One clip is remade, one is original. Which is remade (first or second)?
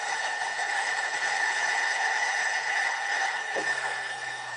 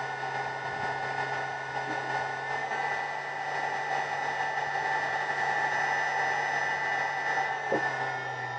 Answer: first